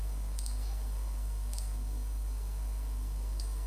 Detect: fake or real fake